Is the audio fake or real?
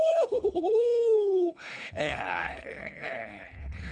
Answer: fake